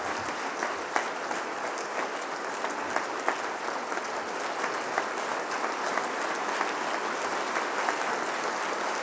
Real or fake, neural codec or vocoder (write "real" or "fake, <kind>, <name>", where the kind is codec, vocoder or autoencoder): real